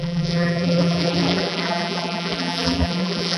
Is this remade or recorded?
remade